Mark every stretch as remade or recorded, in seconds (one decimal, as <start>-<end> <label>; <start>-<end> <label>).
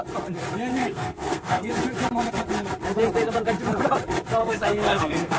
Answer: 0.0-0.7 recorded; 0.7-1.7 remade; 1.7-4.4 recorded; 4.4-5.4 remade